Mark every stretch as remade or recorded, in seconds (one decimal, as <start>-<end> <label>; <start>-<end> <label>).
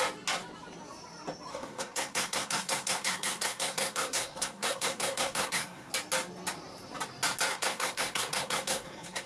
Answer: 0.0-1.5 recorded; 1.5-5.9 remade; 5.9-7.5 recorded; 7.5-9.3 remade